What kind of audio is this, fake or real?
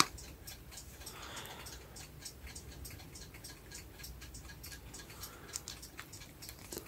real